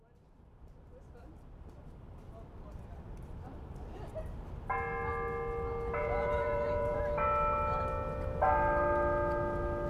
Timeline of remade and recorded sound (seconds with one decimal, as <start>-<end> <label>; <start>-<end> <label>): 0.0-6.0 recorded; 6.0-7.0 remade; 7.0-9.9 recorded